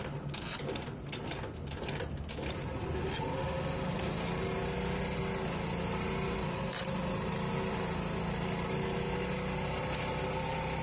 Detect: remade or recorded recorded